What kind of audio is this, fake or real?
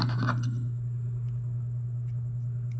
real